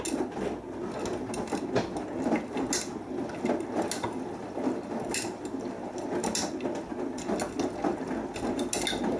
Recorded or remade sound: recorded